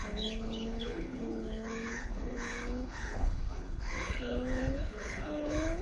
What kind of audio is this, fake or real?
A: fake